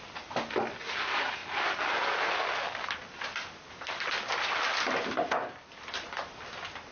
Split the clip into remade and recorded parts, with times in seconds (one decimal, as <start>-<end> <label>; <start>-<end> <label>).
0.0-6.9 recorded